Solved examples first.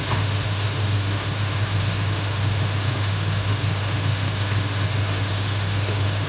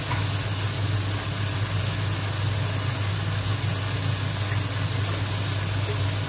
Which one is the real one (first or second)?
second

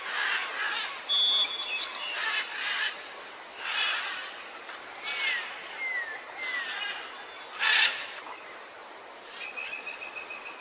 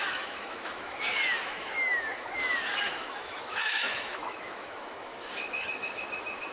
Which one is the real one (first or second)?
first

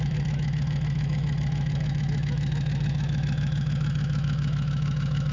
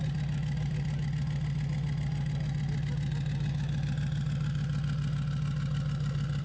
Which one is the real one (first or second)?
second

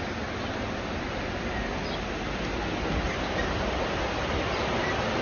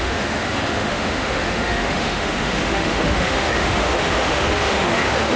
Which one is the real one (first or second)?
first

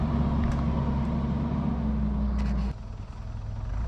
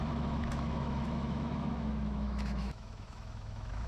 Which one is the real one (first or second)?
first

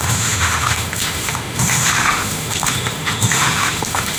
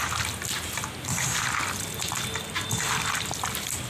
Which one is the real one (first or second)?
second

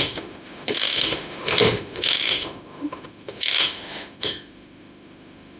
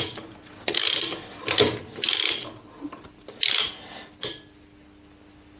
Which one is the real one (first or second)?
second